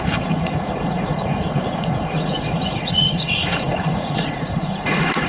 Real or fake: fake